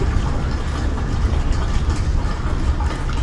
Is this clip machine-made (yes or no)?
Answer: no